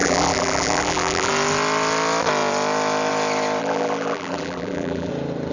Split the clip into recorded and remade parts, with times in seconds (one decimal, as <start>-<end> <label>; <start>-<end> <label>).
0.0-1.3 remade; 1.3-3.6 recorded; 3.6-5.1 remade; 5.1-5.5 recorded